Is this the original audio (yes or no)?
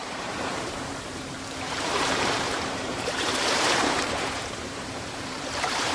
no